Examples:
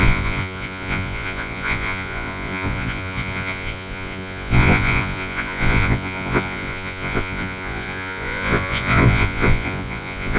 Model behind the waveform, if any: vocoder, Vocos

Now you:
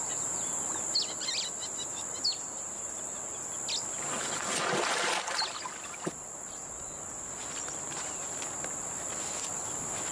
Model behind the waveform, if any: none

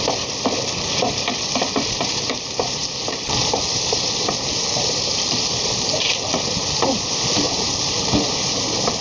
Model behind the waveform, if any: vocoder, BigVGAN v2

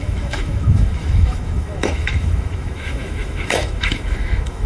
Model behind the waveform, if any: autoencoder, DAC-VAE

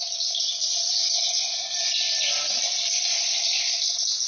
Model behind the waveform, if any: none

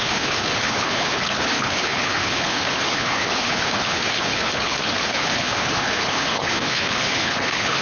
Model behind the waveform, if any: codec, HILCodec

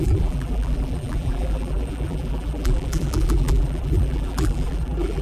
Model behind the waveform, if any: vocoder, BigVGAN v2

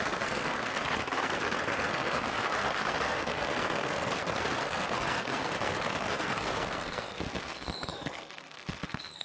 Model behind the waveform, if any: codec, SNAC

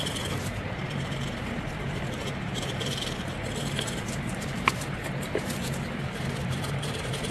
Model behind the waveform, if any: vocoder, BigVGAN v2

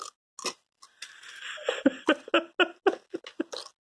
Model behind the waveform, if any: none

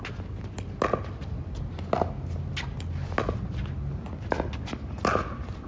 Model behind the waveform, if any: none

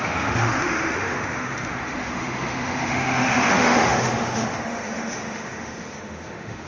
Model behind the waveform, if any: autoencoder, DAC-VAE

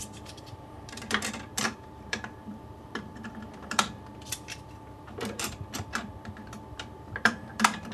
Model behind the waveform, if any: vocoder, BigVGAN v2